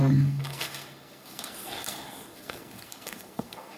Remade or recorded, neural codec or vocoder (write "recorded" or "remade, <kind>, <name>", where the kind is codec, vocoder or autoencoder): remade, codec, SNAC